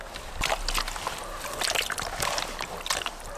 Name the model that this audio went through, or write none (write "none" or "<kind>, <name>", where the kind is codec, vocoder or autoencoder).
none